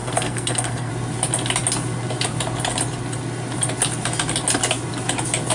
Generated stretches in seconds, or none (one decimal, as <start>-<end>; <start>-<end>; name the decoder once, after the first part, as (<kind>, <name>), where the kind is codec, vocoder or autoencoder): 0.0-0.9 (codec, SNAC)